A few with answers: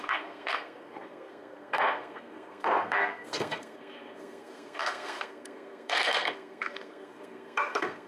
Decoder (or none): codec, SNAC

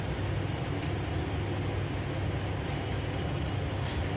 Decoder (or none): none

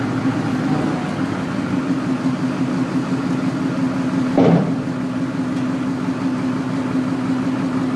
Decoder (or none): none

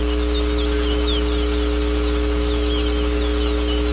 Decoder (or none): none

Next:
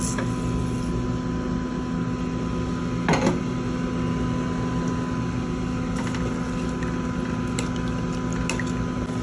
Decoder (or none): none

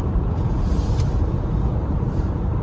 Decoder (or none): vocoder, BigVGAN v2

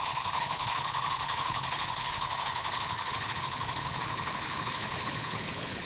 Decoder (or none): codec, HILCodec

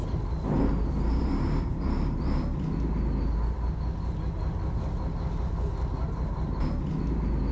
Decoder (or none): none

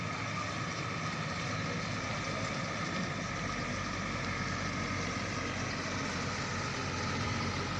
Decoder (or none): none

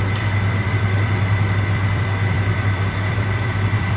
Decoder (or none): vocoder, BigVGAN v2